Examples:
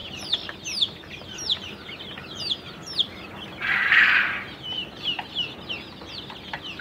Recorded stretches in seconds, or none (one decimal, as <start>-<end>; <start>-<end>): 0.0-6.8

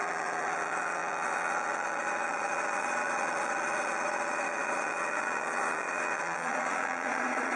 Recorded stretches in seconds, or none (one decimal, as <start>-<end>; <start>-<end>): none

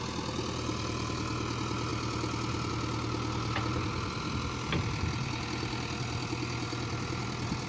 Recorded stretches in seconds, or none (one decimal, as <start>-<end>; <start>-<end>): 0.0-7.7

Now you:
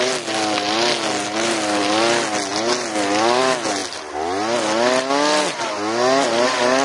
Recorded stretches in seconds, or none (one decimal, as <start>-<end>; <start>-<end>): 0.0-6.8